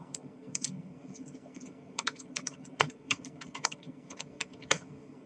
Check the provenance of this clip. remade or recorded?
remade